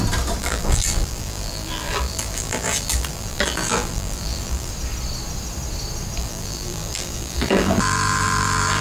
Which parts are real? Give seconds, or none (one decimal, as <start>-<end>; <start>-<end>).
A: 0.0-0.4; 4.7-6.2